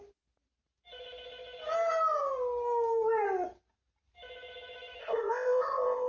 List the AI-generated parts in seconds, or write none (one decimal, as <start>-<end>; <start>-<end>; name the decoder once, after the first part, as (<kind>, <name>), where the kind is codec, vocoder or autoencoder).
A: 5.0-6.1 (codec, ZipCodec)